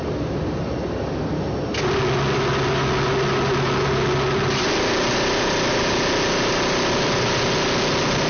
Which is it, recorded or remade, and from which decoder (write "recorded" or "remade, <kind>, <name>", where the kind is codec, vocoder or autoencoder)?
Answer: recorded